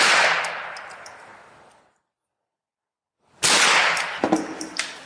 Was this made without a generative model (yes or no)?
yes